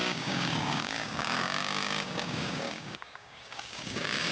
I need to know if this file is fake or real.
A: fake